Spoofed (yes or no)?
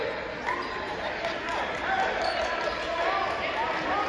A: no